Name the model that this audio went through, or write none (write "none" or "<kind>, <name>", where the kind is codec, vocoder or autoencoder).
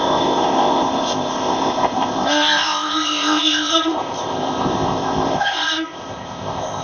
codec, ZipCodec